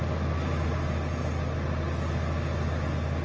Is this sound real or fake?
real